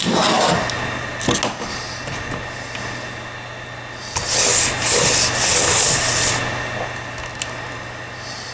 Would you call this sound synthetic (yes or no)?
no